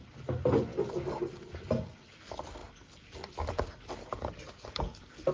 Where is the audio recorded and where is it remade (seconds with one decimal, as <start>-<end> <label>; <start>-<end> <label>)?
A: 0.0-5.3 recorded